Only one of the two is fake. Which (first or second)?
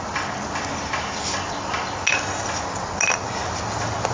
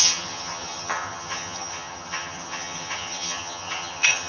second